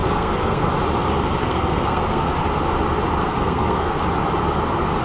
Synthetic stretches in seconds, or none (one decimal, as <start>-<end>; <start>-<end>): 0.0-0.7; 1.4-2.3; 3.2-4.0